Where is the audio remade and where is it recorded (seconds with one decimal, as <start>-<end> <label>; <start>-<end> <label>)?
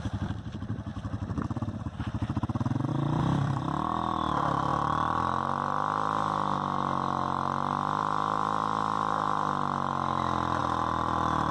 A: 0.0-11.5 remade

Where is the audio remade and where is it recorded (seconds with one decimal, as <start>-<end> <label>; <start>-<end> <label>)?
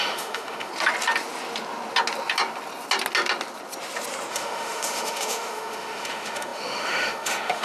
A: 0.0-0.7 remade; 0.7-4.3 recorded; 4.3-7.6 remade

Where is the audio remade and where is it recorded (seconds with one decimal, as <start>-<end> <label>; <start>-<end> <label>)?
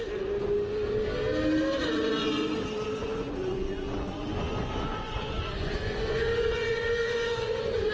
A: 0.0-1.8 recorded; 1.8-2.5 remade; 2.5-3.0 recorded; 3.0-7.9 remade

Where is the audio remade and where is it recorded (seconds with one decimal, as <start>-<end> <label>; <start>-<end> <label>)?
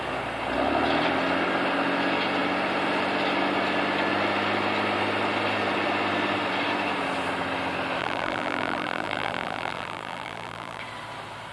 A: 0.0-8.0 recorded; 8.0-10.8 remade; 10.8-11.5 recorded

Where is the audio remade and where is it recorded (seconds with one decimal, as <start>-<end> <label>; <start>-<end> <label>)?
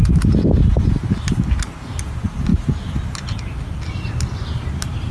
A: 0.0-5.1 recorded